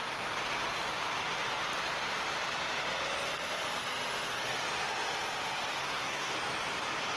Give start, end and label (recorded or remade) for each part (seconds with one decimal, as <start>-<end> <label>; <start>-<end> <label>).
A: 0.0-5.8 recorded; 5.8-6.3 remade; 6.3-7.2 recorded